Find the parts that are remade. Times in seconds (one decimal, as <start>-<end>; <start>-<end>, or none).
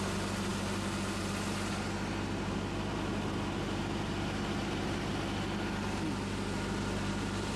none